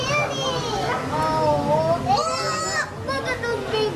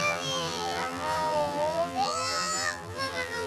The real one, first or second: first